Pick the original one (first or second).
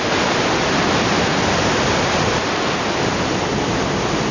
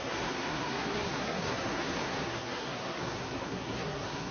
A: first